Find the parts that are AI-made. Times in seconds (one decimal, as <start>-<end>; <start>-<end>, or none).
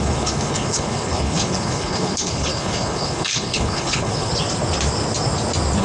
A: 0.0-4.3